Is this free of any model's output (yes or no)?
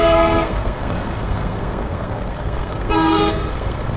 no